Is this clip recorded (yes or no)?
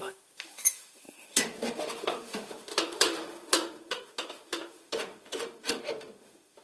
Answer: no